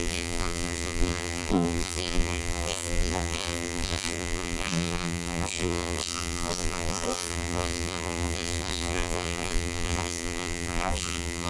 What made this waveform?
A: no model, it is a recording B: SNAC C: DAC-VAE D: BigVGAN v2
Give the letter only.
D